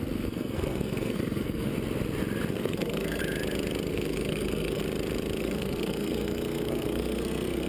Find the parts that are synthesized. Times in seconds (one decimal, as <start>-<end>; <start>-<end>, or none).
0.0-1.7; 2.5-3.2; 3.9-4.8; 5.4-7.7